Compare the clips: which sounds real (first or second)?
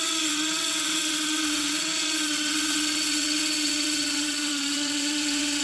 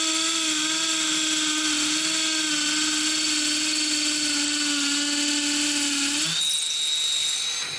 second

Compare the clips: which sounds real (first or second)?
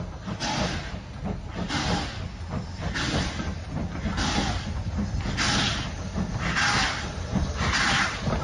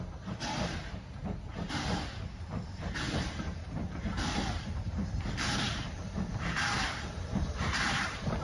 first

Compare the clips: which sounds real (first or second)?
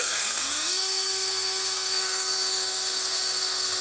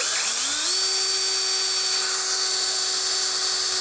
second